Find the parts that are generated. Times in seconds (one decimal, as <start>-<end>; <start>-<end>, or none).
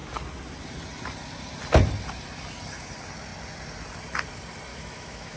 4.7-5.4